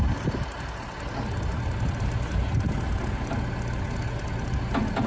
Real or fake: real